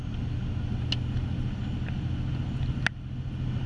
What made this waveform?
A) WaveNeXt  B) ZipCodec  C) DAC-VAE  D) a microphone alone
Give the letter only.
D